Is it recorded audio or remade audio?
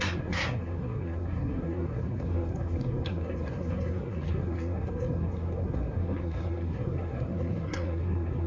remade